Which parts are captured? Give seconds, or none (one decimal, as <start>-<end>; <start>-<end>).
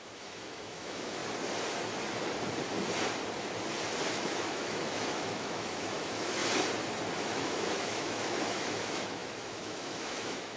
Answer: 1.2-4.1; 6.4-7.2